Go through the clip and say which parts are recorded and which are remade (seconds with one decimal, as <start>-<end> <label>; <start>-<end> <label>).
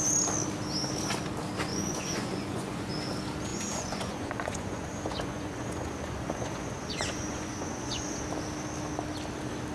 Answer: 0.0-1.7 recorded; 1.7-2.9 remade; 2.9-3.5 recorded; 3.5-8.2 remade; 8.2-9.7 recorded